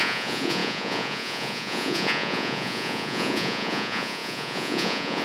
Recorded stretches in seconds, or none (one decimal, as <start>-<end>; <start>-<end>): none